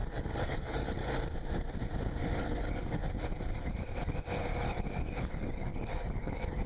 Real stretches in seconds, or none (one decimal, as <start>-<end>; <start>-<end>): 1.0-2.4; 3.0-4.5